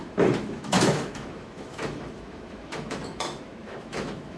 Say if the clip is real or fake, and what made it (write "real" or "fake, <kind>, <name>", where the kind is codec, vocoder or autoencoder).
fake, autoencoder, DAC-VAE